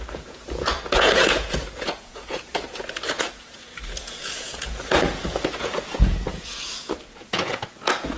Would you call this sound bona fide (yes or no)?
no